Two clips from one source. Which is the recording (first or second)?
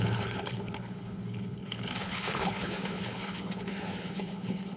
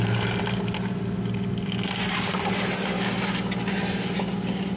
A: second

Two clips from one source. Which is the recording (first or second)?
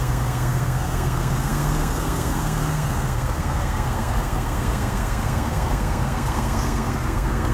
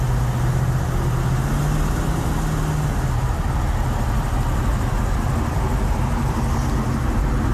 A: second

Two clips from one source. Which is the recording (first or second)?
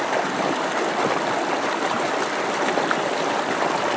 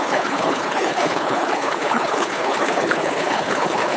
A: first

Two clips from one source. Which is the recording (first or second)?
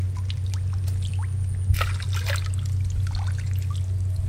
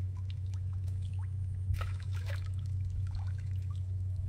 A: first